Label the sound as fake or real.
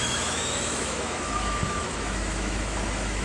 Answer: fake